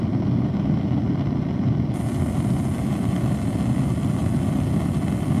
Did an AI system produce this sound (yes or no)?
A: no